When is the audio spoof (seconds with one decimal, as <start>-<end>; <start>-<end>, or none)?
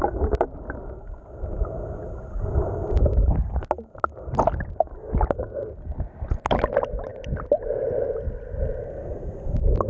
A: none